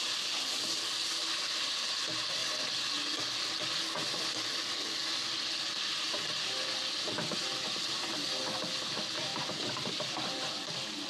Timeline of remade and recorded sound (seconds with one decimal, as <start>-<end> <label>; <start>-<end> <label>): 0.0-9.3 recorded; 9.3-10.6 remade; 10.6-11.1 recorded